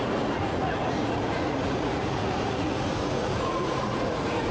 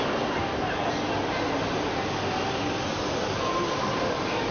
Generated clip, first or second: first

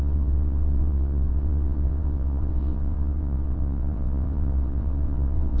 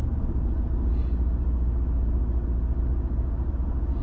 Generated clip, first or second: first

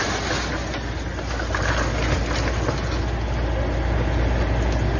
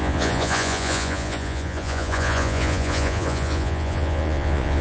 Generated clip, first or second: second